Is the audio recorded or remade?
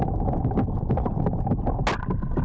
recorded